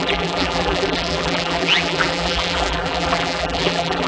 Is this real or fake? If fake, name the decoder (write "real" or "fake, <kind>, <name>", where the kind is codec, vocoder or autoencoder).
fake, vocoder, BigVGAN v2